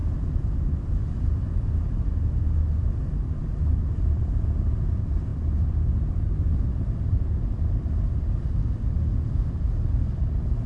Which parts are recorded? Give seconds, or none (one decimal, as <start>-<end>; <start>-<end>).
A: 0.0-10.7